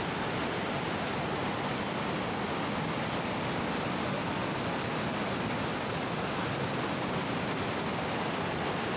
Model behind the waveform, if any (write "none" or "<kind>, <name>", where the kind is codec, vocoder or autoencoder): none